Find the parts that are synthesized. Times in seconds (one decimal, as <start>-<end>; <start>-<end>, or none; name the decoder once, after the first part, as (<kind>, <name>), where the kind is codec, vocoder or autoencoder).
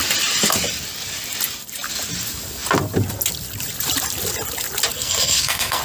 4.9-5.8 (codec, SNAC)